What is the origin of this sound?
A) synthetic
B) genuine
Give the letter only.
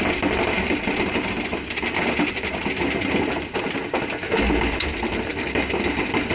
B